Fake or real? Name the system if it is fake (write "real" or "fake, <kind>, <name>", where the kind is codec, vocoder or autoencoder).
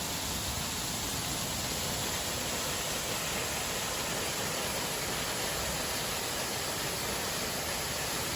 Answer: real